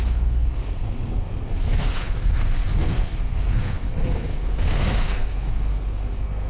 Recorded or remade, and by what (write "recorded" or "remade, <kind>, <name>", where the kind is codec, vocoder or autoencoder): remade, codec, SNAC